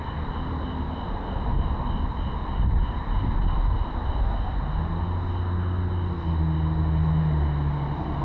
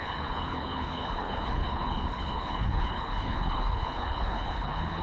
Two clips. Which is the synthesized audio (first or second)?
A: second